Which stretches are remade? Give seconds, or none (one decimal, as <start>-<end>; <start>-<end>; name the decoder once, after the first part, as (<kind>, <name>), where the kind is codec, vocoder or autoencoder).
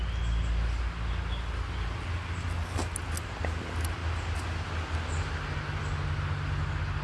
none